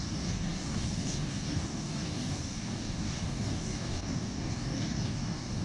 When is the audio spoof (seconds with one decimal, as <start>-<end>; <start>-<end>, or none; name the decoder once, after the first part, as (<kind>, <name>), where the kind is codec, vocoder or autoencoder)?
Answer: 0.0-5.6 (codec, DAC)